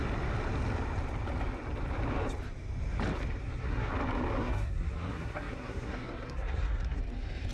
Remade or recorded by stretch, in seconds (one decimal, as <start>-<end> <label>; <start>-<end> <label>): 0.0-3.4 recorded; 3.4-3.9 remade; 3.9-4.4 recorded; 4.4-7.0 remade; 7.0-7.5 recorded